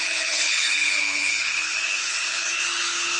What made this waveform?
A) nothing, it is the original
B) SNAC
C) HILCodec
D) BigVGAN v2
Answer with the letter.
C